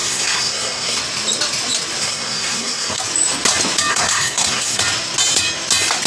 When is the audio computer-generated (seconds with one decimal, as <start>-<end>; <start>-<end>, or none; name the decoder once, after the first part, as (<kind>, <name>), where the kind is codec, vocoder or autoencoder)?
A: 0.0-1.0 (codec, SNAC); 2.0-3.0; 3.9-4.8